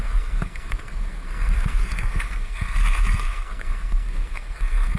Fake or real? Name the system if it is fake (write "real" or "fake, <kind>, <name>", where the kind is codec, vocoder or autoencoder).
fake, codec, SNAC